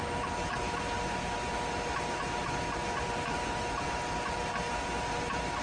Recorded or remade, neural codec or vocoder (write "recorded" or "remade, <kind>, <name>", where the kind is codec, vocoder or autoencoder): recorded